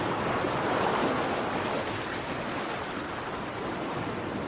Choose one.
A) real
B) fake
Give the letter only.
A